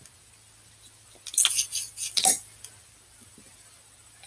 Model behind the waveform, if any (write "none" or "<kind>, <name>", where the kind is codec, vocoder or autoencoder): none